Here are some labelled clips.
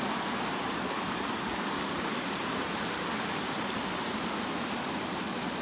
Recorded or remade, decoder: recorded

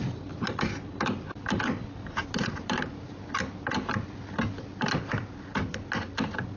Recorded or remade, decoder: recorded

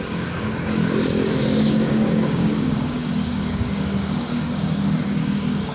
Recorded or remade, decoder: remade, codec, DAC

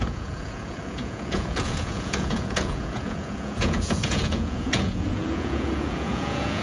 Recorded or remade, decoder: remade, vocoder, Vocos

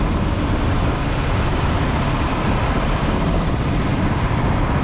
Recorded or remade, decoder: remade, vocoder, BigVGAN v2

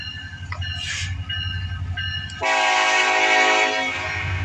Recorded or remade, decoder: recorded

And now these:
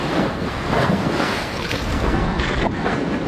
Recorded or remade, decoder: remade, codec, SNAC